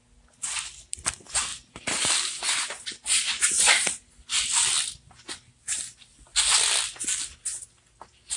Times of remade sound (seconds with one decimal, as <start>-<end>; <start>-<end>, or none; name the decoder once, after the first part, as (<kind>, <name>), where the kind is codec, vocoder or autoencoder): 1.5-3.4 (vocoder, BigVGAN v2); 4.3-6.8

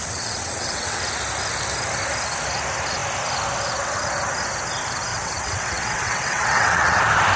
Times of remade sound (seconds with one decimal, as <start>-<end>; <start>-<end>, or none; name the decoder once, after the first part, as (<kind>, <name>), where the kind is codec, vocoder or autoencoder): 0.0-1.0 (vocoder, WaveNeXt); 5.1-7.0

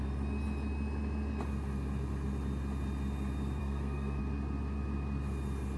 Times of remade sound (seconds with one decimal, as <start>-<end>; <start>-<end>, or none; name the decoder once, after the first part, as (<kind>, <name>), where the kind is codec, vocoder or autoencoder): 3.6-4.2 (codec, SNAC)

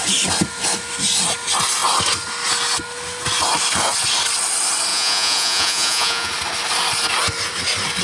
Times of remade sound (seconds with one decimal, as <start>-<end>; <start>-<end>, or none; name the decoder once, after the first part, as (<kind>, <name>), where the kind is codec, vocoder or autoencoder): 4.9-6.3 (vocoder, Vocos)